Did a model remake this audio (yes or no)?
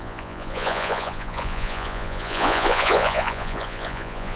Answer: yes